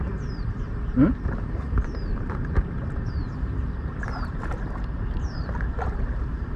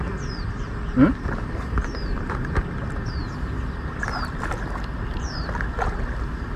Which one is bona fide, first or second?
second